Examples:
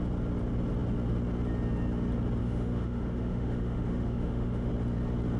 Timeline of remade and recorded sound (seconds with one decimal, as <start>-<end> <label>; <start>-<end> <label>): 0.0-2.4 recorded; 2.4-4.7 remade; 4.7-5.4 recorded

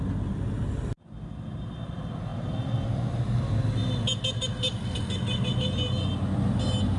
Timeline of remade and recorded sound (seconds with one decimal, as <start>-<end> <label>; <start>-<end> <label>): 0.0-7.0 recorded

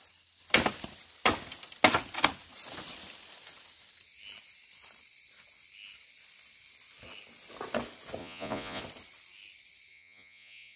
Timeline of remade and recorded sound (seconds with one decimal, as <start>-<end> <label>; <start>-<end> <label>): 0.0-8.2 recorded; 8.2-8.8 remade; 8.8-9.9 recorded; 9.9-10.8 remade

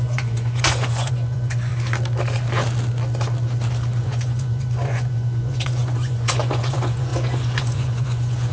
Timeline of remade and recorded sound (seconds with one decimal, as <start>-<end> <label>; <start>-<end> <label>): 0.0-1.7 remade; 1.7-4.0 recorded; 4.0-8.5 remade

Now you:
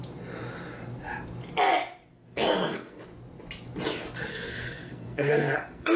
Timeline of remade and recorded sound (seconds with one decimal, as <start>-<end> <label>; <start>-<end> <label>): 0.0-2.1 recorded; 2.1-3.0 remade; 3.0-4.3 recorded; 4.3-6.0 remade

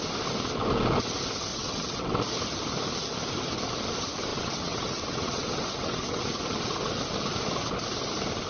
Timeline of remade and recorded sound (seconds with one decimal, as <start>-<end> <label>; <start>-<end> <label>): 0.0-1.5 recorded; 1.5-2.2 remade; 2.2-4.3 recorded; 4.3-6.2 remade; 6.2-8.5 recorded

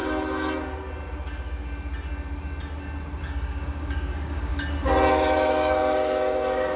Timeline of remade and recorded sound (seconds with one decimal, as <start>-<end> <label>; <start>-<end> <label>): 0.0-3.2 recorded; 3.2-4.5 remade; 4.5-5.1 recorded; 5.1-6.8 remade